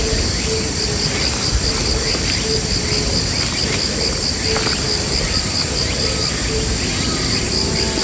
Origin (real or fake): real